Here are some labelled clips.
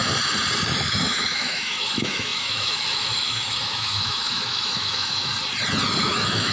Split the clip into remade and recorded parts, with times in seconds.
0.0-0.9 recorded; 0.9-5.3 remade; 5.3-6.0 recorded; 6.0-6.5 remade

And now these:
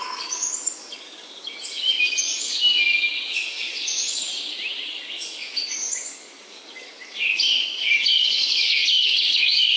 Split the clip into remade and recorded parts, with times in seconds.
0.0-4.3 remade; 4.3-4.9 recorded; 4.9-9.8 remade

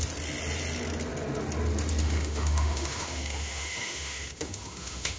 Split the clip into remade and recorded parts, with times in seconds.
0.0-2.0 recorded; 2.0-5.2 remade

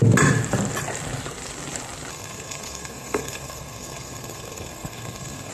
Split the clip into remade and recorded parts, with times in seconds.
0.0-2.1 recorded; 2.1-5.5 remade

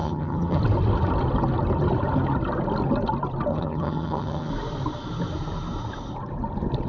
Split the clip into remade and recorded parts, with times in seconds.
0.0-0.6 remade; 0.6-3.5 recorded; 3.5-4.5 remade; 4.5-6.9 recorded

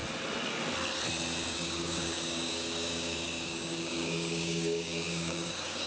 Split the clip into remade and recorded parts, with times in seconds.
0.0-1.5 recorded; 1.5-5.9 remade

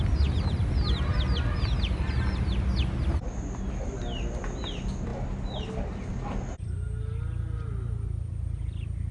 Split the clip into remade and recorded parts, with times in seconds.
0.0-9.1 recorded

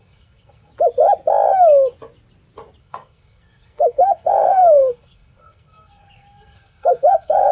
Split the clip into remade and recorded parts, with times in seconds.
0.0-0.7 remade; 0.7-2.8 recorded; 2.8-7.5 remade